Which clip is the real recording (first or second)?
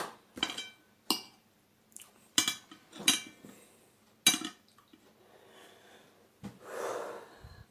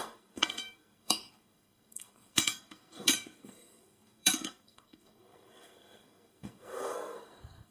first